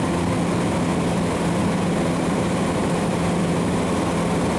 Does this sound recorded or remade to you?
recorded